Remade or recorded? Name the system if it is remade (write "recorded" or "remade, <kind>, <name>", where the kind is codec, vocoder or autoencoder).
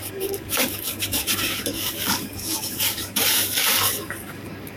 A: remade, codec, DAC